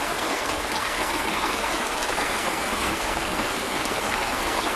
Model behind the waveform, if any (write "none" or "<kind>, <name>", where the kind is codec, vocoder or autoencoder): codec, SNAC